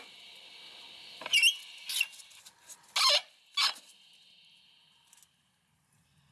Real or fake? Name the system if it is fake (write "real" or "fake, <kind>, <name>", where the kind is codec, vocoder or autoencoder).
real